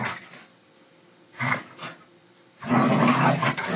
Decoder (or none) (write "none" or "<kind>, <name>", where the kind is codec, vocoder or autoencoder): none